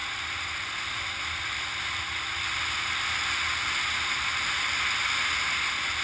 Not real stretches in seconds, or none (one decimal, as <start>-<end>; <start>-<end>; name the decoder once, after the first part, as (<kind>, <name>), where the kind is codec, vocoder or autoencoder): none